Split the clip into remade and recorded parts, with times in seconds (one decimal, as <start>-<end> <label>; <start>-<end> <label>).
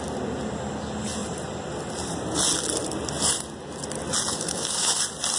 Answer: 0.0-4.3 recorded; 4.3-5.0 remade; 5.0-5.4 recorded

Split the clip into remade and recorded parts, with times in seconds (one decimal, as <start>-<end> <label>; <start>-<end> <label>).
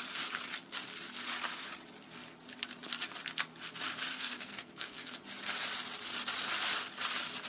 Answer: 0.0-4.1 recorded; 4.1-5.2 remade; 5.2-7.5 recorded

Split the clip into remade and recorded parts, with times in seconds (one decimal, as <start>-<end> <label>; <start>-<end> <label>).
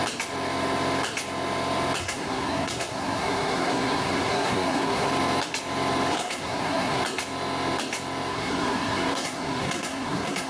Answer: 0.0-2.0 recorded; 2.0-5.1 remade; 5.1-6.1 recorded; 6.1-7.0 remade; 7.0-8.3 recorded; 8.3-10.5 remade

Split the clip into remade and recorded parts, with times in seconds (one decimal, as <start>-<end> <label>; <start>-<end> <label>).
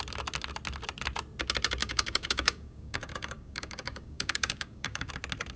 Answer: 0.0-1.8 recorded; 1.8-5.1 remade; 5.1-5.6 recorded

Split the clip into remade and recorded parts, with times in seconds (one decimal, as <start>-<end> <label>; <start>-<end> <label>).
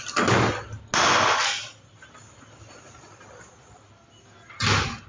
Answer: 0.0-5.1 recorded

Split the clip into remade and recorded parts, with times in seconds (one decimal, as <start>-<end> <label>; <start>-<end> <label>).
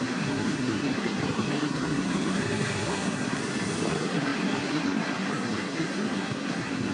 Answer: 0.0-3.4 remade; 3.4-3.9 recorded; 3.9-6.9 remade